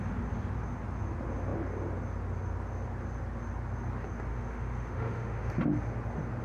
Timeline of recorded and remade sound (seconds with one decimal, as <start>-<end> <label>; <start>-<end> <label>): 0.0-4.3 recorded; 4.3-5.5 remade; 5.5-6.4 recorded